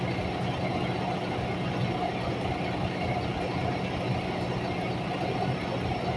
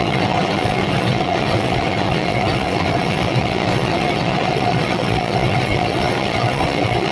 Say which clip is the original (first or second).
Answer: first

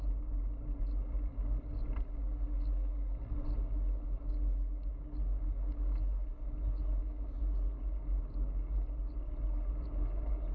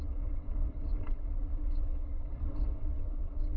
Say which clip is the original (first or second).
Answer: first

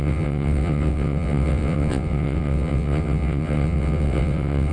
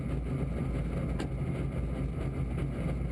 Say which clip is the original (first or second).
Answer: second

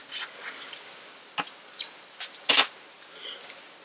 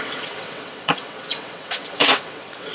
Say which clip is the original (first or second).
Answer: first